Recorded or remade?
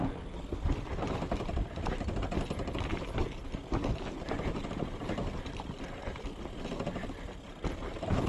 recorded